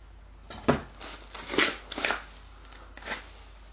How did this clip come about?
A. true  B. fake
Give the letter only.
A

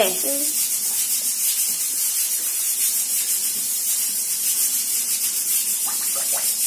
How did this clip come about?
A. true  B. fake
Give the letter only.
A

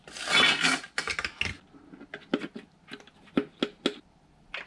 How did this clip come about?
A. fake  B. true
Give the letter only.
B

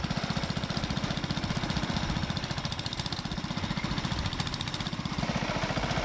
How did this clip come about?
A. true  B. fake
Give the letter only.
A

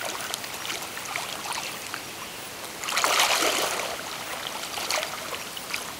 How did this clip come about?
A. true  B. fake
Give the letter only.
A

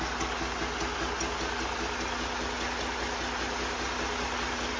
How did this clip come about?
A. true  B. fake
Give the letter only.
A